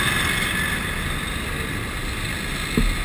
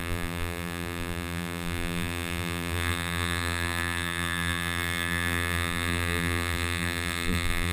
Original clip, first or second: first